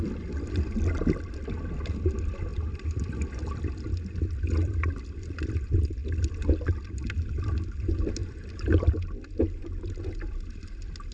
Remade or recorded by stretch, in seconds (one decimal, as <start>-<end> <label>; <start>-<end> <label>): 0.0-11.1 recorded